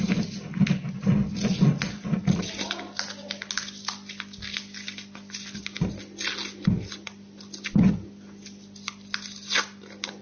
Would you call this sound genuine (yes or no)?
yes